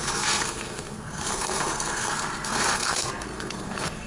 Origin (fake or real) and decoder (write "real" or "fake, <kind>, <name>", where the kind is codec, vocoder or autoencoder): fake, codec, SNAC